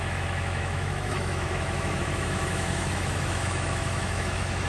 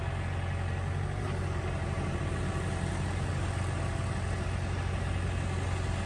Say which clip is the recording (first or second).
second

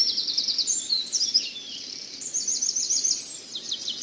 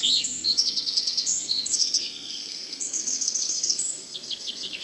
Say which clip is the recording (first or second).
first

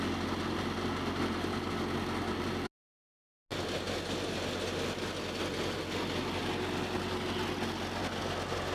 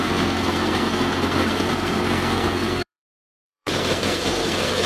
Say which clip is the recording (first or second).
first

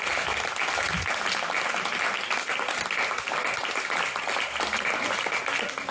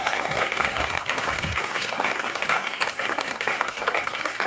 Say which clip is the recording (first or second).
first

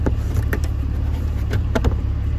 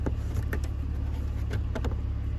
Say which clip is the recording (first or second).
second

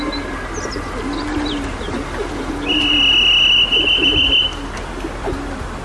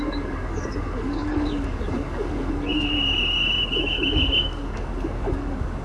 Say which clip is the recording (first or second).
first